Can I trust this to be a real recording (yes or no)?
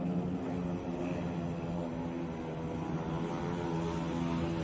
yes